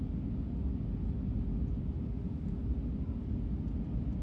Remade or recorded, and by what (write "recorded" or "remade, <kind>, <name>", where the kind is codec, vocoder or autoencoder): recorded